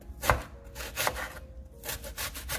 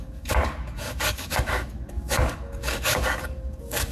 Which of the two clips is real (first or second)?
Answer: first